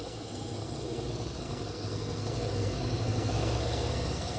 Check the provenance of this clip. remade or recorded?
remade